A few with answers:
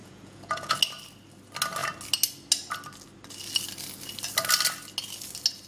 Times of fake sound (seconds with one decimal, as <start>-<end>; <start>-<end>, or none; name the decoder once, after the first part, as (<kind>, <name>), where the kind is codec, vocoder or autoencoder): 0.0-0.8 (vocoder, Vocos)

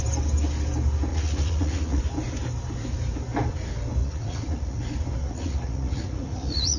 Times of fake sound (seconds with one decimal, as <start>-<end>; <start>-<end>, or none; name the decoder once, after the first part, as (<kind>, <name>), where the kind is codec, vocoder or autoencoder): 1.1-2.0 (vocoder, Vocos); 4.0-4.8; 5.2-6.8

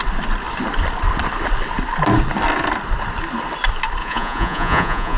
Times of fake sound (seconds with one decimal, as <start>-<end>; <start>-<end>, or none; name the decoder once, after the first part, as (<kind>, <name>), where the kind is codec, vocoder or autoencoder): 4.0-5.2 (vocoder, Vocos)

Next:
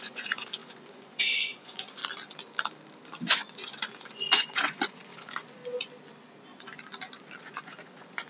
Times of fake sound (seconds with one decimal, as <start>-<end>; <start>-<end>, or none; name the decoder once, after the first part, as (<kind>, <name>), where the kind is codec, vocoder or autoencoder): 0.0-2.0 (vocoder, Vocos); 3.2-5.6; 7.4-8.3